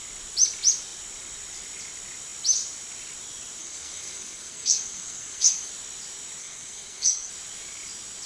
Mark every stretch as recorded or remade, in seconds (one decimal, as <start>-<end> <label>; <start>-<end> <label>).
0.0-3.6 recorded; 3.6-5.7 remade; 5.7-6.4 recorded; 6.4-7.3 remade; 7.3-8.3 recorded